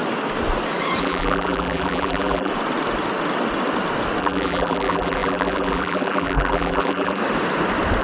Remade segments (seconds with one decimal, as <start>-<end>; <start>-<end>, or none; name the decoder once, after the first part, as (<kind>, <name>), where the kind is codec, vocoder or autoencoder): 1.0-2.5 (vocoder, BigVGAN v2); 4.2-7.2